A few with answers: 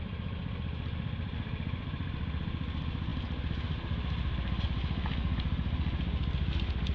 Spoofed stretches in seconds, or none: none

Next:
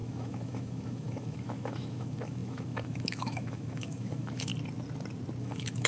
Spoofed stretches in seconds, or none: 0.0-4.5; 5.4-5.9

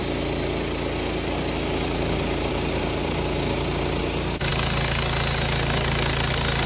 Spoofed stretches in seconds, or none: none

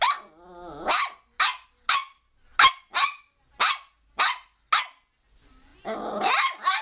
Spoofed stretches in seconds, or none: none

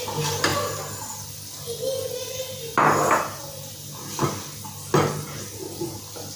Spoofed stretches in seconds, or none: none